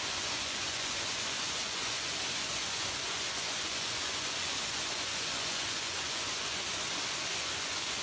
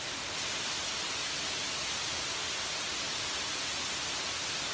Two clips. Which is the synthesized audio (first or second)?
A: first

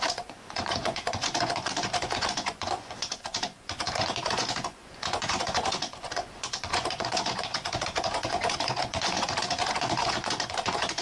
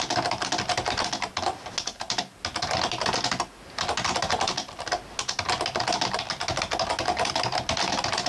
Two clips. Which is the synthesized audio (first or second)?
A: first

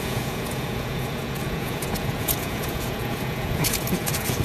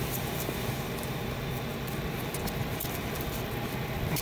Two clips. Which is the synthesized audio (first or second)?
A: first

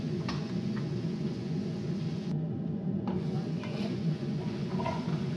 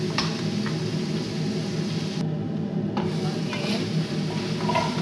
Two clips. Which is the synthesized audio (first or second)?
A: first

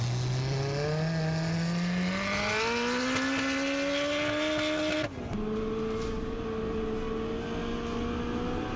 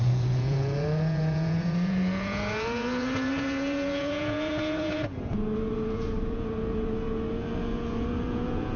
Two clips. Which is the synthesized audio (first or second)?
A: second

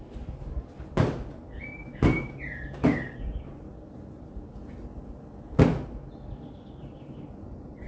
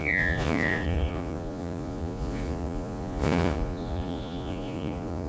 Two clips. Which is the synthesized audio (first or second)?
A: second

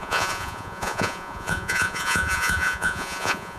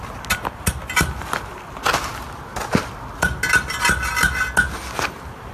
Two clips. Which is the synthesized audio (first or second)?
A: first